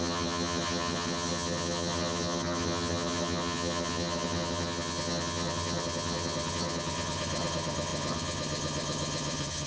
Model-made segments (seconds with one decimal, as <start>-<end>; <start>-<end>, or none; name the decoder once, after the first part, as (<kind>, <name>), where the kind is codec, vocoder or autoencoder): 0.0-9.7 (vocoder, HiFi-GAN)